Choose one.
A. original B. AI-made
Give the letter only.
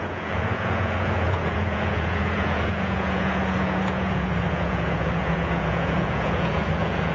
B